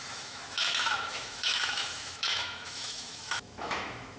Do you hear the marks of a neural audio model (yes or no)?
yes